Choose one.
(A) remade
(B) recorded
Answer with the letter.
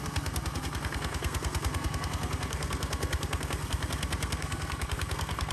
A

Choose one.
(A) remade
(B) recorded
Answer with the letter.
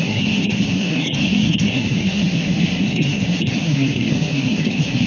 A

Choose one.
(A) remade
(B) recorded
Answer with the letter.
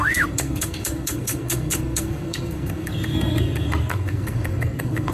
A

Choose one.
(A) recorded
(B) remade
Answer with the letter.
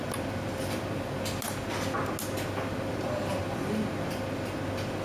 A